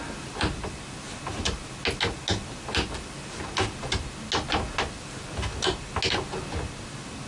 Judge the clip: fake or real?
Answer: real